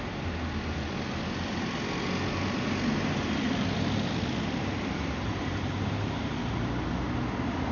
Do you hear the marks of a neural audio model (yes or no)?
no